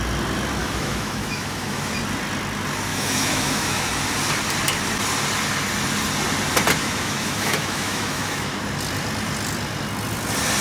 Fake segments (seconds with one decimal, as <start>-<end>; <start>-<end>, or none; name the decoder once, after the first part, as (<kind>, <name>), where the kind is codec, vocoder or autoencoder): 0.6-1.9 (autoencoder, DAC-VAE); 2.9-3.9; 6.8-8.6